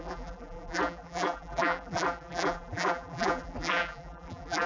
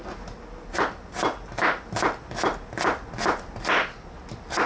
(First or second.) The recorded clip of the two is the second